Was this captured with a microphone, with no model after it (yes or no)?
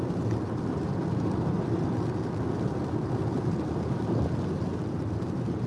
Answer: yes